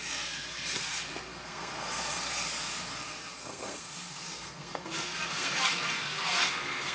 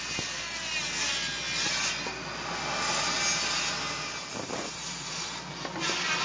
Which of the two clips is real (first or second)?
second